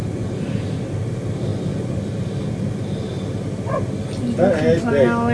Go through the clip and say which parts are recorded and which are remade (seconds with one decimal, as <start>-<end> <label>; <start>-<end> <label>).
0.0-5.3 recorded